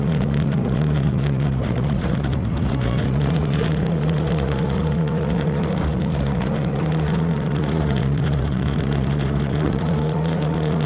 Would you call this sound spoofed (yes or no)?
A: yes